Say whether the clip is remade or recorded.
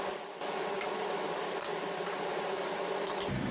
recorded